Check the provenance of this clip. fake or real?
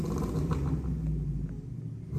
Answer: real